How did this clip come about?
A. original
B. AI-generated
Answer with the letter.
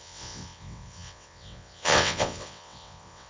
B